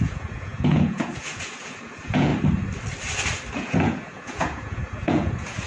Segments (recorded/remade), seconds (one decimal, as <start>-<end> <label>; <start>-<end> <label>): 0.0-2.3 remade; 2.3-3.5 recorded; 3.5-5.7 remade